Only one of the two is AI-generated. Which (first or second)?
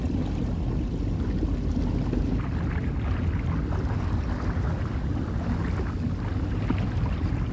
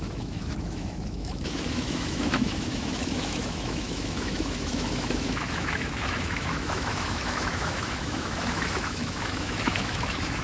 second